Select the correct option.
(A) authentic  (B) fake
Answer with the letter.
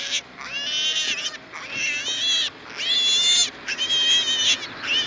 A